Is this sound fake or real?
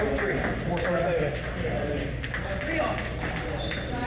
real